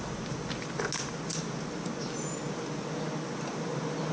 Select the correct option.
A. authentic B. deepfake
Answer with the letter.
A